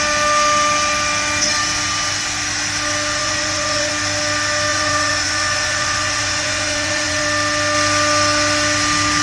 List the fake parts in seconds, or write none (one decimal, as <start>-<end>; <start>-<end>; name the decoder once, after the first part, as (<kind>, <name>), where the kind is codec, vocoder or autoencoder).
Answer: 3.2-3.9 (vocoder, Vocos); 4.7-7.2